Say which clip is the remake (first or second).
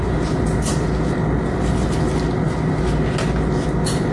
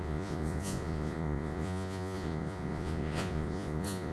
second